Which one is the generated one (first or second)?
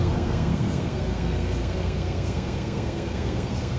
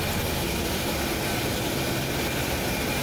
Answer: first